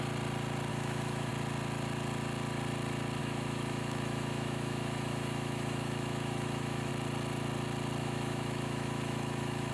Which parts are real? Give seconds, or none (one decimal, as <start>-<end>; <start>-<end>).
0.0-0.7; 1.3-3.2; 6.9-8.0